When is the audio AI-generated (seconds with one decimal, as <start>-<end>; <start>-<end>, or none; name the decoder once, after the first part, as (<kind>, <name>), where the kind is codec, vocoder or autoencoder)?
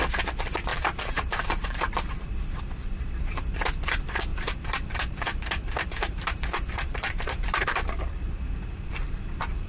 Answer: 0.7-1.8 (vocoder, BigVGAN v2); 4.3-9.1